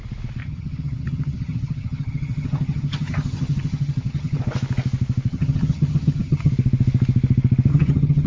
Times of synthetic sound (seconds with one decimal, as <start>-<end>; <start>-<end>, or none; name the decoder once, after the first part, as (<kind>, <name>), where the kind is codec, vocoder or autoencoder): 0.4-4.4 (vocoder, HiFi-GAN); 5.3-6.5; 7.7-8.3